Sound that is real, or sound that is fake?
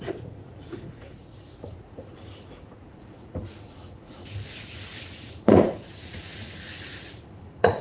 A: fake